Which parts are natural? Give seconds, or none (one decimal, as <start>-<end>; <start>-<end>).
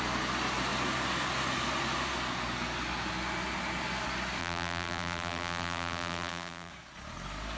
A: 0.0-4.4; 6.7-7.6